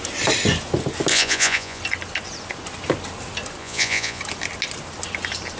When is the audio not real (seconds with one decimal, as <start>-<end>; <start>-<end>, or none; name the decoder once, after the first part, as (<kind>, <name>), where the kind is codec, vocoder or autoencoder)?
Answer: 1.1-1.8 (vocoder, Vocos); 3.6-4.2